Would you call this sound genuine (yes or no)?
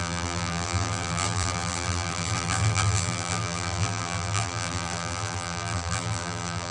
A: no